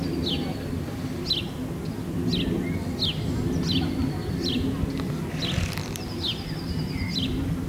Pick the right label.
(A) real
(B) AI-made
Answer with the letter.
A